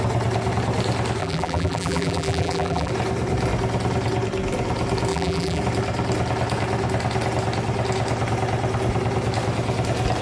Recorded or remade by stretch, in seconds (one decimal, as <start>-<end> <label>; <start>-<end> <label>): 0.0-1.2 recorded; 1.2-2.9 remade; 2.9-5.1 recorded; 5.1-5.6 remade; 5.6-10.2 recorded

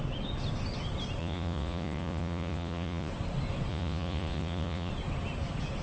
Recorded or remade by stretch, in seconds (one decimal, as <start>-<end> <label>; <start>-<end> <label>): 0.0-1.2 recorded; 1.2-3.1 remade; 3.1-3.7 recorded; 3.7-4.9 remade; 4.9-5.8 recorded

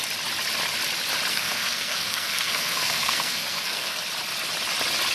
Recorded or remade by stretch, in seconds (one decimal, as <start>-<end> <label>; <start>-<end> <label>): 0.0-1.3 recorded; 1.3-4.0 remade; 4.0-5.1 recorded

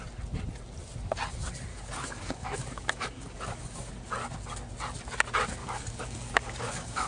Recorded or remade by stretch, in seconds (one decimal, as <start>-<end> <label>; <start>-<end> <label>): 0.0-1.7 recorded; 1.7-3.9 remade; 3.9-5.6 recorded; 5.6-7.1 remade

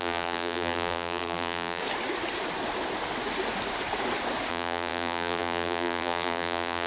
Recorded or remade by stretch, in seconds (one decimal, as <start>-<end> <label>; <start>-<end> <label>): 0.0-1.8 remade; 1.8-4.5 recorded; 4.5-6.9 remade